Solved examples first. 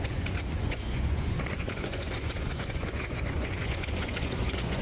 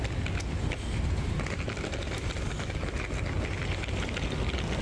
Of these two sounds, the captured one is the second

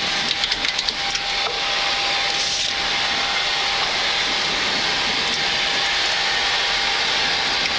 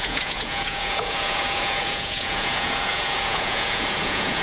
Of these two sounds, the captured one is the first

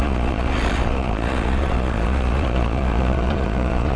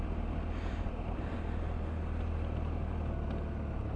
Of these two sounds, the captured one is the second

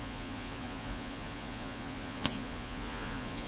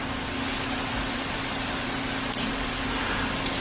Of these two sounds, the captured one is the second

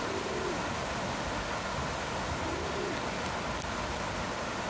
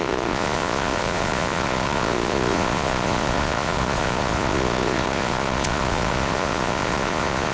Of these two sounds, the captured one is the first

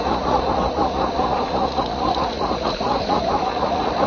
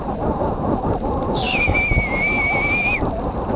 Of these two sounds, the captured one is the second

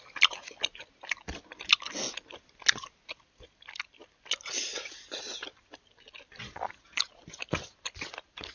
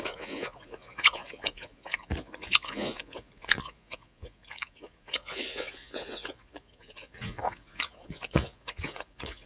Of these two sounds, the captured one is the first